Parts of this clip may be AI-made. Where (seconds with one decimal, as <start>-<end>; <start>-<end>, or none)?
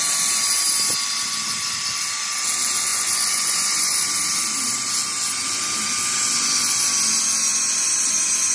2.9-4.1